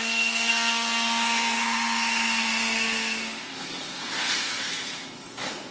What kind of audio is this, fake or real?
fake